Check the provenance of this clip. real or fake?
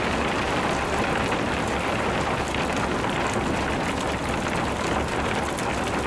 real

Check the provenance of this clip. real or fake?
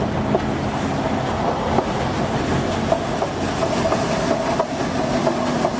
real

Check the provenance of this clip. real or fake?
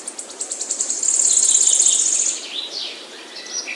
real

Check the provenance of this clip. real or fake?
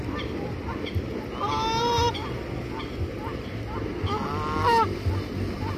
real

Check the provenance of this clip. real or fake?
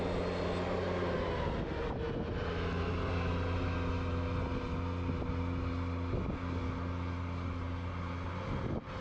real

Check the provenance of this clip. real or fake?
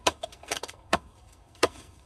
fake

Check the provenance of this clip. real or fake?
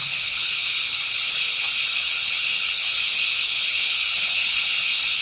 fake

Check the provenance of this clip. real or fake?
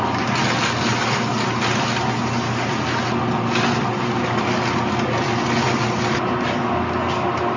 real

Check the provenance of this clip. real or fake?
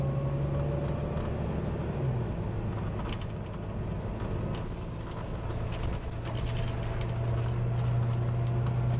real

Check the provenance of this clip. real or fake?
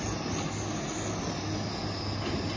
real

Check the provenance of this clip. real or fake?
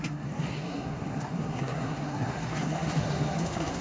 fake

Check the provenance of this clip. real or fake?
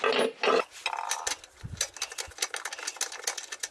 real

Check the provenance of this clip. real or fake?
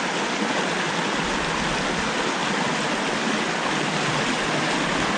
real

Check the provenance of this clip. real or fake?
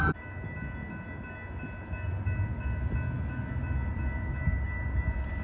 real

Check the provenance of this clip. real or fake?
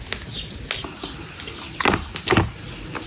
real